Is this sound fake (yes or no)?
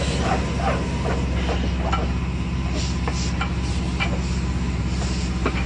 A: no